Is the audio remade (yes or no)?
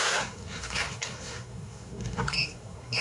yes